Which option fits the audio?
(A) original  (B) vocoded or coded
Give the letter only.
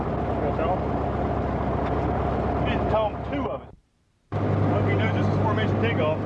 A